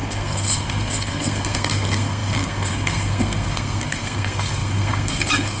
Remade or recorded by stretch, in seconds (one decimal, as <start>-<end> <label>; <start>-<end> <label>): 0.0-5.6 remade